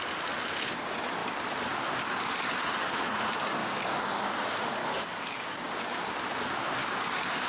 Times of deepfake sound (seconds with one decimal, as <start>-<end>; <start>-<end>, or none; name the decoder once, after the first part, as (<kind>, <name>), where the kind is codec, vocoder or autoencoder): 3.6-4.3 (codec, DAC); 4.8-6.1; 6.8-7.5